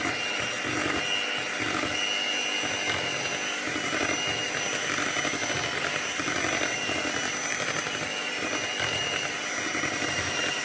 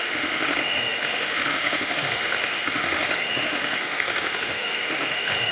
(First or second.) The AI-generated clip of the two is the second